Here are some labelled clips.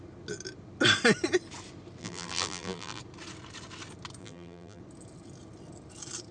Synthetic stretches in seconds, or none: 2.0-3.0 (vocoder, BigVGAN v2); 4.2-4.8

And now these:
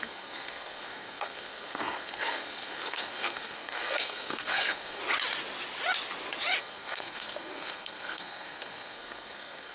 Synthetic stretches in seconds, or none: 0.0-5.0 (codec, SNAC); 6.6-9.7